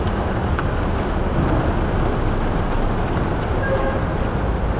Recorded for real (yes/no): yes